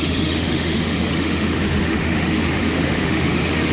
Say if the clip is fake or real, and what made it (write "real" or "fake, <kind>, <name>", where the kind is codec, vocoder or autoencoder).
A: fake, autoencoder, DAC-VAE